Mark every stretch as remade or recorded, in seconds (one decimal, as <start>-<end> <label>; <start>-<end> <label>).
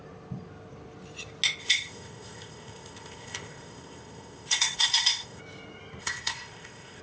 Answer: 0.0-1.6 recorded; 1.6-5.4 remade; 5.4-6.0 recorded; 6.0-7.0 remade